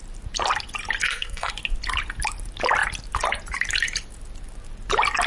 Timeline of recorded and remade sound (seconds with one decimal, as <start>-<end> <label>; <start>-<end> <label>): 0.0-1.0 recorded; 1.0-1.5 remade; 1.5-5.3 recorded

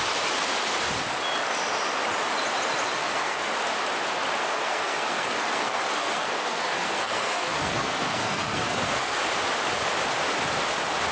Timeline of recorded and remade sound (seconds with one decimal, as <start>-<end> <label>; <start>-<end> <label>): 0.0-3.0 recorded; 3.0-3.5 remade; 3.5-4.4 recorded; 4.4-9.2 remade; 9.2-11.1 recorded